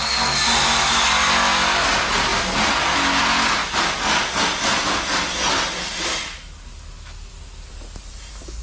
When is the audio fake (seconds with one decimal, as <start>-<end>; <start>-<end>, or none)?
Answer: none